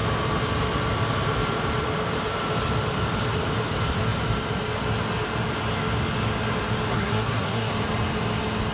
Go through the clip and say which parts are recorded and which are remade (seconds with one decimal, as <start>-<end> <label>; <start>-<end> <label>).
0.0-6.9 recorded; 6.9-7.7 remade; 7.7-8.7 recorded